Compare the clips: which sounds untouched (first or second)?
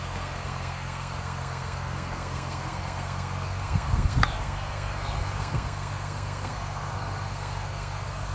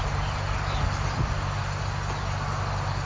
second